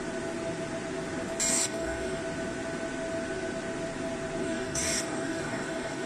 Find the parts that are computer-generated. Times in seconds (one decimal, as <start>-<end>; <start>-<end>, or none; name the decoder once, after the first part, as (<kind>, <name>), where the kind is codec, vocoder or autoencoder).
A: 1.5-2.2 (codec, DAC); 4.4-6.1